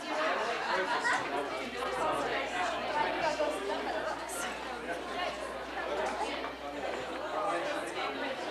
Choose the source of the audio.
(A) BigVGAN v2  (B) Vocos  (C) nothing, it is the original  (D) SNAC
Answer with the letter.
C